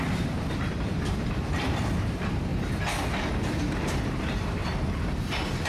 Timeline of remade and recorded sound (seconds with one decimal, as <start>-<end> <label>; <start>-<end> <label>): 0.0-2.5 remade; 2.5-3.4 recorded; 3.4-4.6 remade; 4.6-5.7 recorded